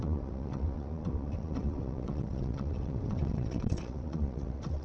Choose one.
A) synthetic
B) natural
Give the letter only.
A